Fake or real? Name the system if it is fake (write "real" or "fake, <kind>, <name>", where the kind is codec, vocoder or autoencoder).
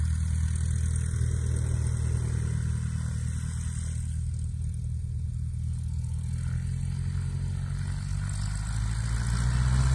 real